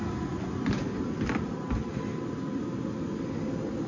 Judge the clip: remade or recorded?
recorded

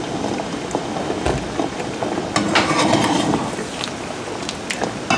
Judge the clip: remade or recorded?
recorded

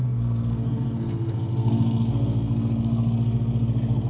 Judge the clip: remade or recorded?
remade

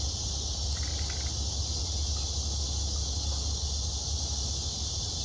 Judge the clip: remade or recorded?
recorded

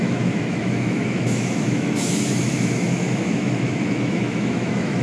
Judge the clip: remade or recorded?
remade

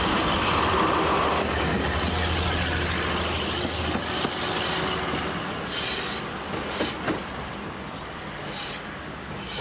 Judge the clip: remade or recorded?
recorded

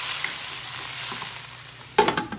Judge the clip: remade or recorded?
recorded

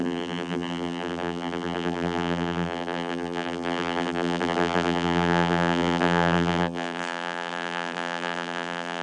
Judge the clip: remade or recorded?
remade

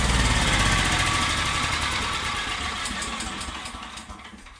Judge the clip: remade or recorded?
recorded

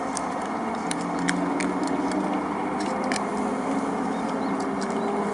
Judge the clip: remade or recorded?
recorded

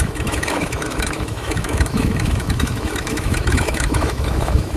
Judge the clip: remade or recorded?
remade